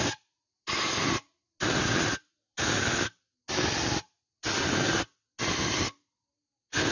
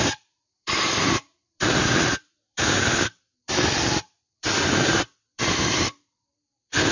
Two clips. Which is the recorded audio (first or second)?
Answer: first